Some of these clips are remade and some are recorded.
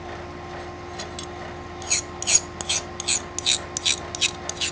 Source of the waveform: recorded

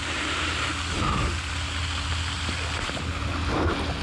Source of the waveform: recorded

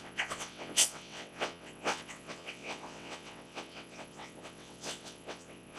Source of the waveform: remade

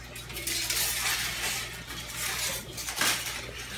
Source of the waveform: recorded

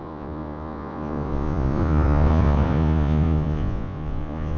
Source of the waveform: remade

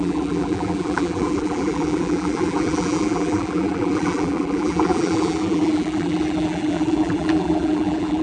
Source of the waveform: remade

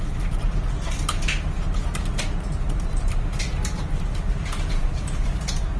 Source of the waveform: recorded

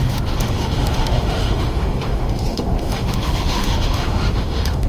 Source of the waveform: remade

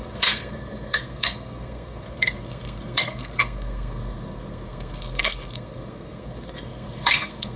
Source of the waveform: remade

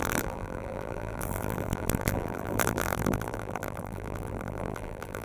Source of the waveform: remade